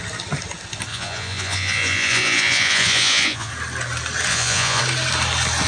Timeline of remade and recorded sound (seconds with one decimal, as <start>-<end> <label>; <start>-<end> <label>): 0.0-0.9 recorded; 0.9-3.5 remade; 3.5-4.3 recorded; 4.3-4.8 remade; 4.8-5.7 recorded